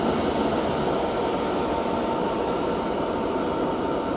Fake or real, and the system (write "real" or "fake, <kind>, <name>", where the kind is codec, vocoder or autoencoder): real